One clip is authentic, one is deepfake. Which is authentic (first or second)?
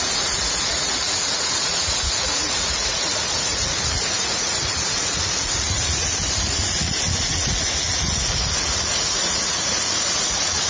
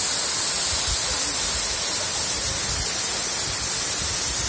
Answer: second